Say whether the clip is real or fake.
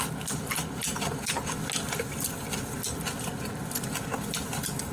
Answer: real